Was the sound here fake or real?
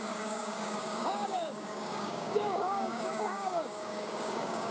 fake